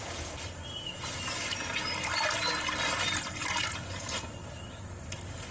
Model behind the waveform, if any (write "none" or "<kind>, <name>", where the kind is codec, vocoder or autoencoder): none